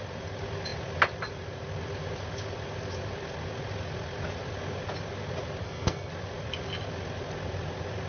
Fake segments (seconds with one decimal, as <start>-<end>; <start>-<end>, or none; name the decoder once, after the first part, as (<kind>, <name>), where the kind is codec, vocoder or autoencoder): 5.6-6.1 (codec, SNAC)